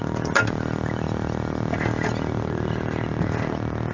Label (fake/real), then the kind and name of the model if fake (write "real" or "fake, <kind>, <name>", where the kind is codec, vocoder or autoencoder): real